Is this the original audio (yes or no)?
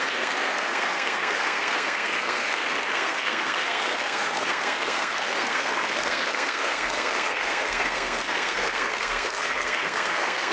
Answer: no